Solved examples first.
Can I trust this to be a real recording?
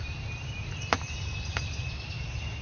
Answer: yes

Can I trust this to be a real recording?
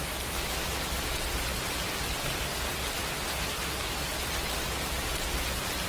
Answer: yes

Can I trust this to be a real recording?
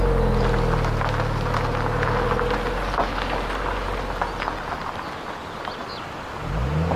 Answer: yes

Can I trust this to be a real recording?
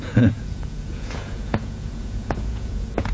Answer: no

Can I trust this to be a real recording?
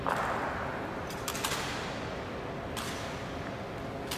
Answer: yes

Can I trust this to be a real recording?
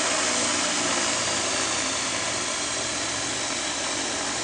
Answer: yes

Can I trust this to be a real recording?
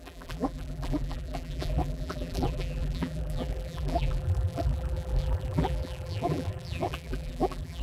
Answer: no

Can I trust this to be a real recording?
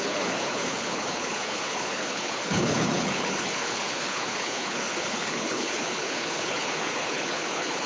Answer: no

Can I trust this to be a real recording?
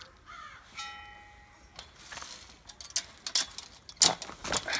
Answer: yes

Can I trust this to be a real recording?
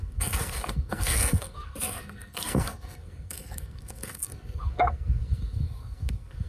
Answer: no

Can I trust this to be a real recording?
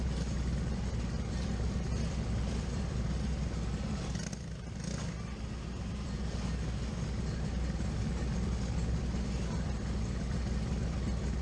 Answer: yes